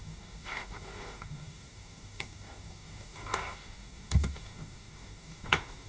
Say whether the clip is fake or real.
fake